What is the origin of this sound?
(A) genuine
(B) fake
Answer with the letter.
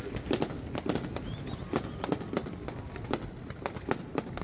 A